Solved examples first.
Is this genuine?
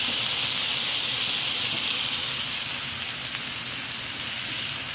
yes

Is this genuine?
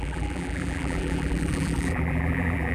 no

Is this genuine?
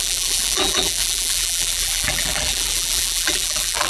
no